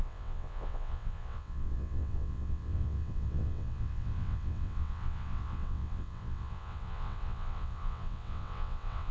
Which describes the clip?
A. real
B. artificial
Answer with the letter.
B